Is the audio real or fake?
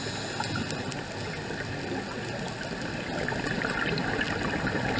real